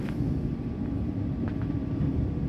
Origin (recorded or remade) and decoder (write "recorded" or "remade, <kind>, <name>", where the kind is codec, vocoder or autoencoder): recorded